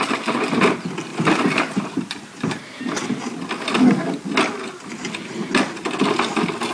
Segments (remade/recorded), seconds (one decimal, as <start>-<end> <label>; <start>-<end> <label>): 0.0-1.1 recorded; 1.1-2.8 remade; 2.8-6.7 recorded